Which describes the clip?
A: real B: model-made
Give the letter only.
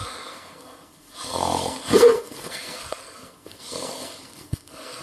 B